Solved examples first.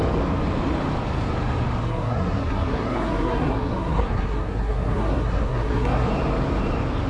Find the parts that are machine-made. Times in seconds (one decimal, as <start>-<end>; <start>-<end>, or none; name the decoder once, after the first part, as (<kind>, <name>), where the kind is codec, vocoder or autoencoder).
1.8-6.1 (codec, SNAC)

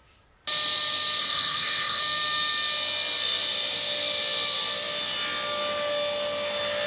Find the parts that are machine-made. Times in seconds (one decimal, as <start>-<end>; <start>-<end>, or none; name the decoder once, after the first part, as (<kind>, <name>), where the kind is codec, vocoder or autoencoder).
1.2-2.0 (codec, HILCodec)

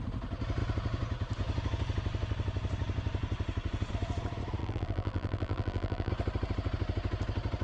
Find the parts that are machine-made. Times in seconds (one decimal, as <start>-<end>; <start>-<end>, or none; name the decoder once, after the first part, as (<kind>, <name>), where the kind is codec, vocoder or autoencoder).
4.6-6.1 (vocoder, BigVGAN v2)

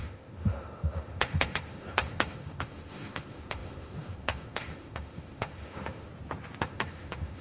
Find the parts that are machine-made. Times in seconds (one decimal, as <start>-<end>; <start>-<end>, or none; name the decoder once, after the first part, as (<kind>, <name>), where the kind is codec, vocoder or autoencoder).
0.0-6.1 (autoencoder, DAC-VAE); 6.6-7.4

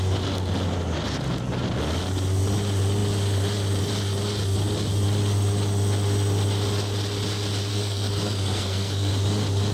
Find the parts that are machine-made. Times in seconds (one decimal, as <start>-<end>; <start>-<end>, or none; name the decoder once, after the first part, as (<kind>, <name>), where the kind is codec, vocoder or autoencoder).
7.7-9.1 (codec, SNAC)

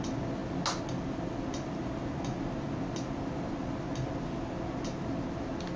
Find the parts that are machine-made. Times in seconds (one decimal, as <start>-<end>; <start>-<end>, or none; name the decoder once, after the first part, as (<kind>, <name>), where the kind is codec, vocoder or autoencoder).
none

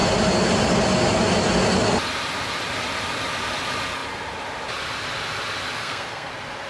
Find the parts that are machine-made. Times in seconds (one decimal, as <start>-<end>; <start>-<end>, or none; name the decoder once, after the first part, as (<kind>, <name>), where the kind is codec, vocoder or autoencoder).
5.8-6.3 (codec, SNAC)

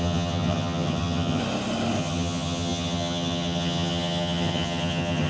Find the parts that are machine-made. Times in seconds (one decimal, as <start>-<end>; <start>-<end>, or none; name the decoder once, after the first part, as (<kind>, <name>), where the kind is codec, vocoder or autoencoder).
0.0-1.4 (vocoder, HiFi-GAN); 2.0-5.3